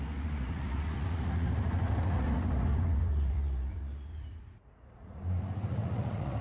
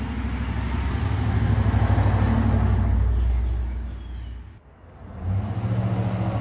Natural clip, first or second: second